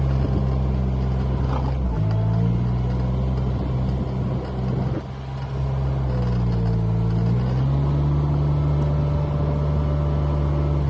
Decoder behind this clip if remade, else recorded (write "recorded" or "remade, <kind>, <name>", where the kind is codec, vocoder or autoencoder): recorded